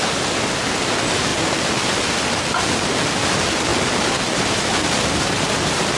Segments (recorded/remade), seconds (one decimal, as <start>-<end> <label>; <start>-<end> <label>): 0.0-6.0 recorded